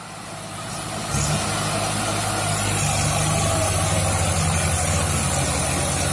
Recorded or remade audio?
recorded